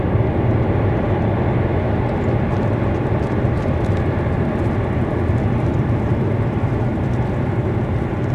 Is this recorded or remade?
recorded